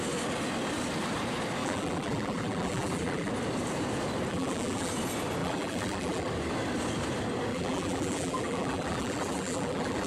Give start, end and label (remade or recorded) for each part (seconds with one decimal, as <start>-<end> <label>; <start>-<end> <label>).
0.0-1.6 recorded; 1.6-3.3 remade; 3.3-4.3 recorded; 4.3-4.9 remade; 4.9-5.4 recorded; 5.4-6.3 remade; 6.3-7.5 recorded; 7.5-10.1 remade